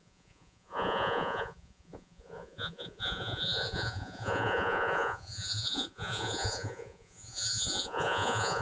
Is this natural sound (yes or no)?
no